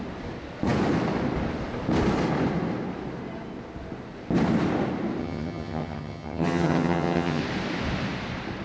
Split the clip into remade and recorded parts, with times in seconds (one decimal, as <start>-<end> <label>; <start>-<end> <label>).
0.0-5.2 recorded; 5.2-7.4 remade; 7.4-8.6 recorded